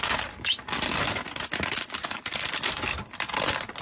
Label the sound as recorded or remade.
recorded